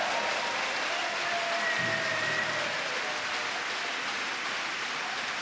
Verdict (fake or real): real